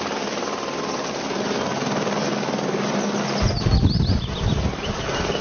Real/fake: real